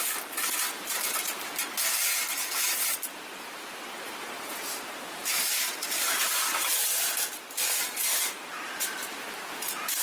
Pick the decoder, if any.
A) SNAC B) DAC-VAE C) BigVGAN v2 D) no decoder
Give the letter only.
C